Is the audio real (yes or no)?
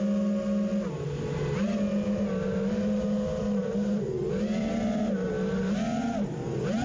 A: yes